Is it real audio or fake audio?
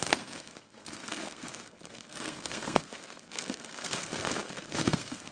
fake